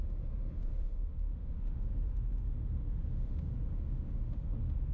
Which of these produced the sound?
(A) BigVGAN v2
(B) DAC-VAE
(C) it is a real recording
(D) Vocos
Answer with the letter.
B